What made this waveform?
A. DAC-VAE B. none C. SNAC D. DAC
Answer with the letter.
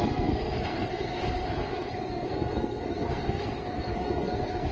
C